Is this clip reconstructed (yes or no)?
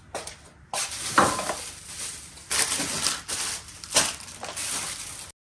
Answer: no